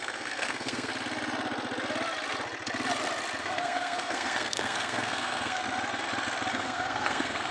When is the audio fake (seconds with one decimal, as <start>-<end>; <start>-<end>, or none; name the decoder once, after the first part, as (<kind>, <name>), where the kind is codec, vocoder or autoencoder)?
0.0-0.9 (codec, SNAC); 3.4-5.6; 6.5-7.5

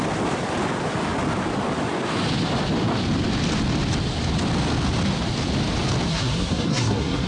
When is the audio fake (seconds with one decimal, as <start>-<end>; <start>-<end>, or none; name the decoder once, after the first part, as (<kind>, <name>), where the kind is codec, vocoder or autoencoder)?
6.1-7.3 (codec, SNAC)